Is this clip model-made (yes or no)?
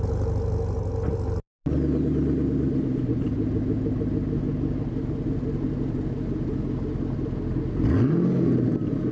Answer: no